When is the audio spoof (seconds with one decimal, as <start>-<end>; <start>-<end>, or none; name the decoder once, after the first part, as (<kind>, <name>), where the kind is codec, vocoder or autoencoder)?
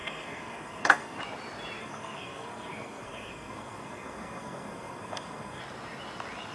0.0-1.2 (codec, SNAC); 1.8-5.6